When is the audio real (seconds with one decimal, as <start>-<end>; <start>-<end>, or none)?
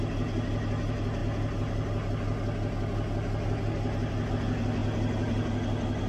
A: 0.0-6.1